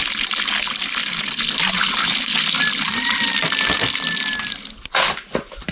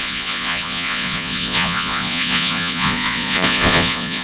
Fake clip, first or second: second